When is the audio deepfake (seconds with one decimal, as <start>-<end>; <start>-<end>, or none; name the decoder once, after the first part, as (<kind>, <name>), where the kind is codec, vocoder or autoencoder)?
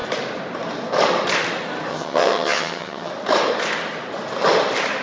1.9-3.1 (vocoder, HiFi-GAN)